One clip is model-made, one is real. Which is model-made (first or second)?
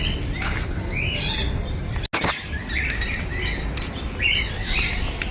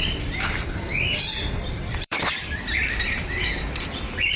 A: second